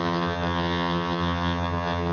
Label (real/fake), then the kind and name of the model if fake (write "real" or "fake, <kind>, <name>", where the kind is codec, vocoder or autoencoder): fake, vocoder, HiFi-GAN